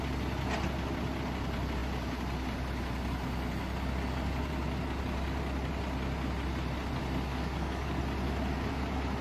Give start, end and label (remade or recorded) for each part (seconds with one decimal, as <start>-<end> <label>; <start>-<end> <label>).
0.0-7.3 recorded; 7.3-8.0 remade; 8.0-9.2 recorded